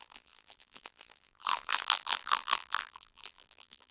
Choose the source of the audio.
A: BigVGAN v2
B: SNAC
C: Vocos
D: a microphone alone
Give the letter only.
A